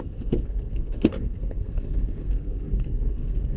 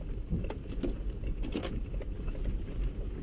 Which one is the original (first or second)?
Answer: second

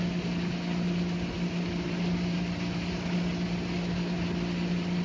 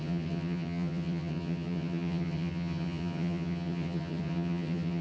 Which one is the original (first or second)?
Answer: first